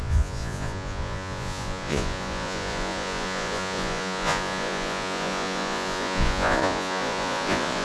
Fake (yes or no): yes